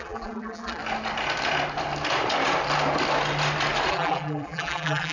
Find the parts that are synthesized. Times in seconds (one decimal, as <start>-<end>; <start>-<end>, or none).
0.0-0.8; 3.9-5.1